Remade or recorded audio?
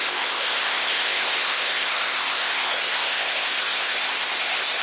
remade